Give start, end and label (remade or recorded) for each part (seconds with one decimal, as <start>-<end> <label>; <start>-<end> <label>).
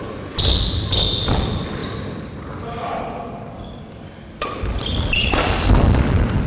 0.0-1.8 recorded; 1.8-3.0 remade; 3.0-6.5 recorded